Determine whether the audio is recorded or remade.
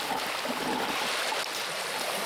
recorded